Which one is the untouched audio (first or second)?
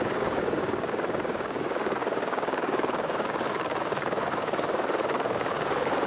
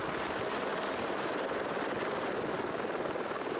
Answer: second